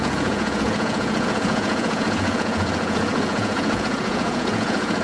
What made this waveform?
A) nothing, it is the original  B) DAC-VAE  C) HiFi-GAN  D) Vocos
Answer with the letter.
D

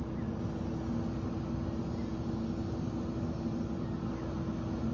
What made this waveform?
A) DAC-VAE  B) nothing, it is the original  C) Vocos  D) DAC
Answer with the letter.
B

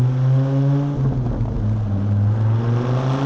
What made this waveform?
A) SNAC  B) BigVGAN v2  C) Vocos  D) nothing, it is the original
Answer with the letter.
D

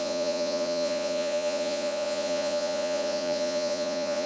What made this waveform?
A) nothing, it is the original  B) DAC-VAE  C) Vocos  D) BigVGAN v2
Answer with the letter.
C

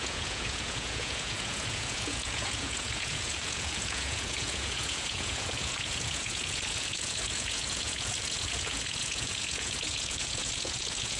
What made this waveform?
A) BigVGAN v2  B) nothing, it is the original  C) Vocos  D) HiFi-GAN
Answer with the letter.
C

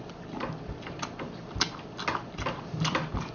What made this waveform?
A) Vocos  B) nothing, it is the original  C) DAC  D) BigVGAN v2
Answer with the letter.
B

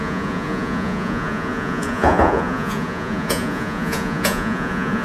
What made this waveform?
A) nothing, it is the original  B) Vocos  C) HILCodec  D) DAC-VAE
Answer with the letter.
B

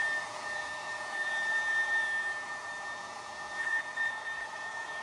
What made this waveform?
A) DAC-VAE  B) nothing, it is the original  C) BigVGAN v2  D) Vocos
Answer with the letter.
D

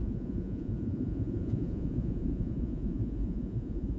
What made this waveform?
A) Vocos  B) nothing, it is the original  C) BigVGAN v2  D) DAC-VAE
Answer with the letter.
A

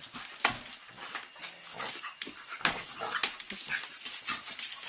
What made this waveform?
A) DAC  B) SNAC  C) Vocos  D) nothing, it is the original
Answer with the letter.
D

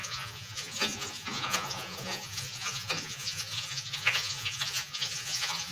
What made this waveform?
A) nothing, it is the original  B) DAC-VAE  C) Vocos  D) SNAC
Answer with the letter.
C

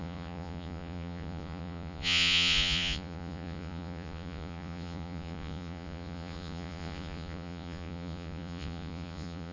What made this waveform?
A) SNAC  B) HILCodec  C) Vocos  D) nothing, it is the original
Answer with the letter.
C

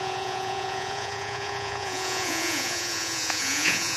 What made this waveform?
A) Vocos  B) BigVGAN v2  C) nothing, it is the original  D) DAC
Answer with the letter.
A